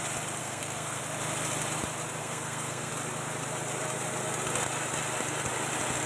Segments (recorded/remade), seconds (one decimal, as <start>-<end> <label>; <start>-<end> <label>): 0.0-0.4 recorded; 0.4-1.0 remade; 1.0-2.2 recorded; 2.2-2.9 remade; 2.9-6.1 recorded